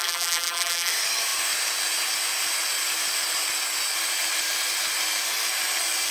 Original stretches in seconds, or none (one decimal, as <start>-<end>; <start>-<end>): 0.9-6.1